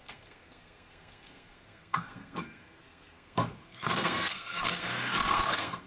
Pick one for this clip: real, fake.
fake